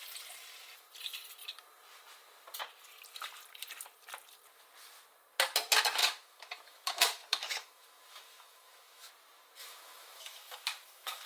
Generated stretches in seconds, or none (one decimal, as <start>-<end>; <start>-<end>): 6.0-9.1; 9.6-11.3